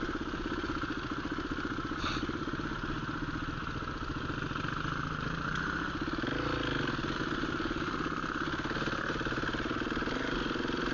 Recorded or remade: recorded